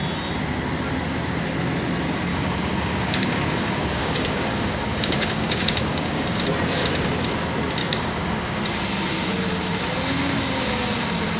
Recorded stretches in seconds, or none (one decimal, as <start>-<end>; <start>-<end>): 0.0-2.3; 6.4-7.8; 8.6-11.4